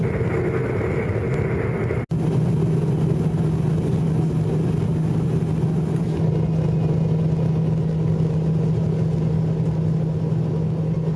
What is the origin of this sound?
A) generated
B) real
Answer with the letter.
B